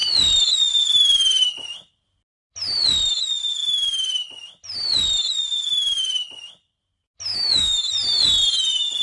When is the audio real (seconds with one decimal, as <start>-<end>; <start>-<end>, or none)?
0.0-7.3; 7.9-9.0